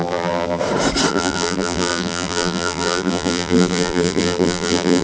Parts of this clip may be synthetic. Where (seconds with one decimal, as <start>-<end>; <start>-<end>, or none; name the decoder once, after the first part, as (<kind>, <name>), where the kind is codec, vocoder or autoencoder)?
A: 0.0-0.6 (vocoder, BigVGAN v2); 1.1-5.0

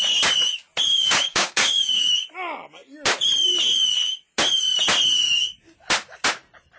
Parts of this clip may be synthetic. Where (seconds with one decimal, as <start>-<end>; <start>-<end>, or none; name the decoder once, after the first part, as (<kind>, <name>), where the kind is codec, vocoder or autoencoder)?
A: 0.9-2.1 (codec, DAC)

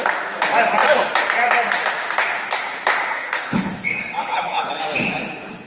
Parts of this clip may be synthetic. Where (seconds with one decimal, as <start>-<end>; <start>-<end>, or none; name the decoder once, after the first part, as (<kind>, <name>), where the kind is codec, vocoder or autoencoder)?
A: 3.1-3.7 (codec, HILCodec); 4.2-4.7

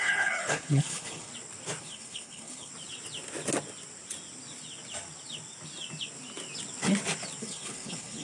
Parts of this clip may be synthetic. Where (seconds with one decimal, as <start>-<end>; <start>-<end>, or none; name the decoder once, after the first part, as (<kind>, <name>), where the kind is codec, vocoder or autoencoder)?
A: 0.0-1.3 (codec, HILCodec); 1.8-2.7; 7.4-8.2